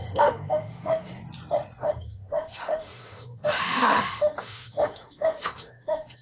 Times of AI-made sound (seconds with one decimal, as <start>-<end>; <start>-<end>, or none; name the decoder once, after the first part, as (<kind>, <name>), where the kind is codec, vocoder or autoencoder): 0.0-1.1 (autoencoder, DAC-VAE); 1.8-6.2